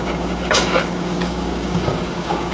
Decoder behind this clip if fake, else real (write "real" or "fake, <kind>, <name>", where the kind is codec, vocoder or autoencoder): fake, codec, DAC